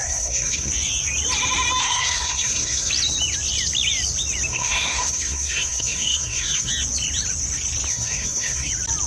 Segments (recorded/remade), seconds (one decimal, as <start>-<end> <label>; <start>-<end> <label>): 0.0-0.7 remade; 0.7-1.8 recorded; 1.8-2.9 remade; 2.9-4.5 recorded; 4.5-6.7 remade; 6.7-7.9 recorded; 7.9-8.7 remade; 8.7-9.1 recorded